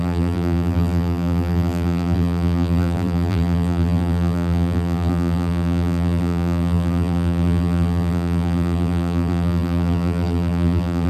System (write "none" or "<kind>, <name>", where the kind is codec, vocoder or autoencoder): vocoder, BigVGAN v2